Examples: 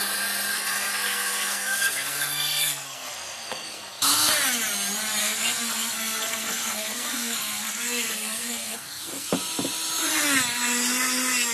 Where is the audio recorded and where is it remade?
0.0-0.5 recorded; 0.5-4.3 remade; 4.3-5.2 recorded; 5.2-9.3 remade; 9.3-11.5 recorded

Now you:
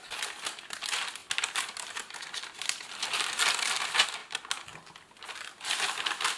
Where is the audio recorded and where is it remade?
0.0-6.4 recorded

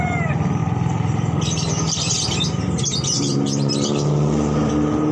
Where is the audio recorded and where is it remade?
0.0-5.1 recorded